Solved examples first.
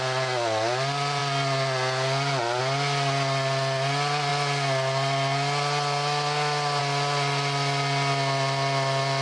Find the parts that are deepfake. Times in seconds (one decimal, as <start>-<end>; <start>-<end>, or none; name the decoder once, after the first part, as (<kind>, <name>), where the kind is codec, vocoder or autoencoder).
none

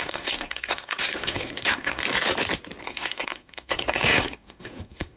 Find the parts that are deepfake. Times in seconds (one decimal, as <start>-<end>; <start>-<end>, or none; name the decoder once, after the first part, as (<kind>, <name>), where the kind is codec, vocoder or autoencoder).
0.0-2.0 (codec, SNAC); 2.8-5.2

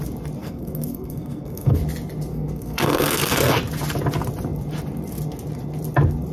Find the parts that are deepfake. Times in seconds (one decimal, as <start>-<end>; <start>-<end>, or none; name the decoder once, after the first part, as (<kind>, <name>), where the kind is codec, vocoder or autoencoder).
0.4-1.8 (codec, SNAC); 2.3-3.6